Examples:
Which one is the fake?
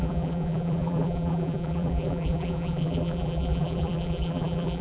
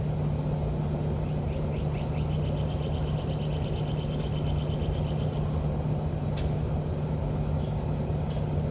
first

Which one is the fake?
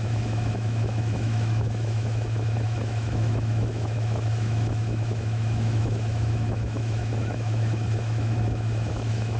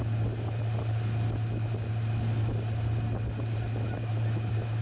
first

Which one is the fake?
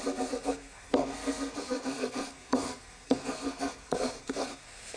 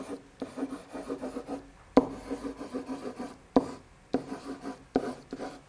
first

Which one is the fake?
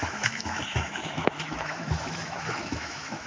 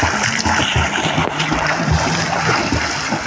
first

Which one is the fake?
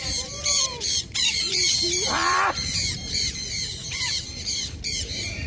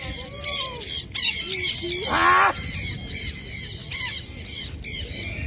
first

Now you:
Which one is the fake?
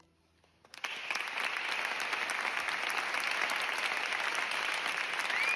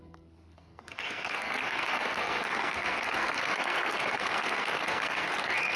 second